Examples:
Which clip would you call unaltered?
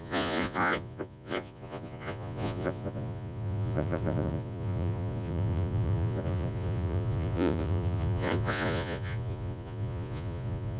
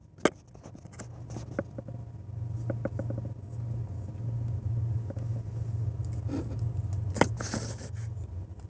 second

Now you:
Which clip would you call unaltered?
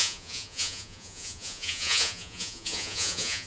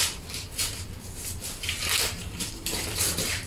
second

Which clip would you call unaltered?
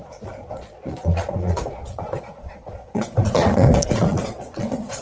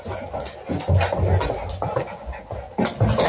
second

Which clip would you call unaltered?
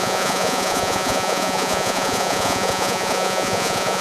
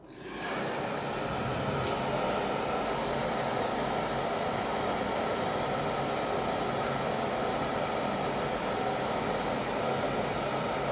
second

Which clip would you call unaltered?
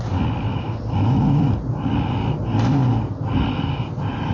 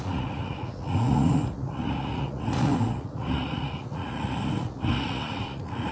first